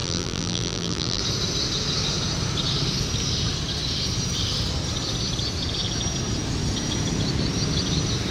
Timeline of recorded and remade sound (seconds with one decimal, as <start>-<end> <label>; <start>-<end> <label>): 0.0-1.2 remade; 1.2-8.3 recorded